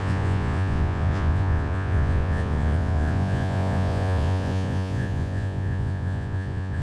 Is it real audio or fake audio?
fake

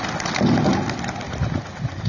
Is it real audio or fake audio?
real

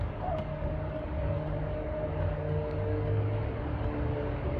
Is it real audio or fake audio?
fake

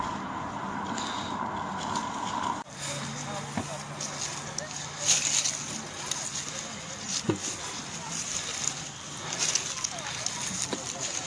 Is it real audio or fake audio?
real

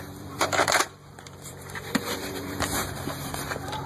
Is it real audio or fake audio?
fake